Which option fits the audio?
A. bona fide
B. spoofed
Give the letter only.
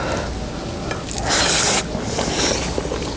A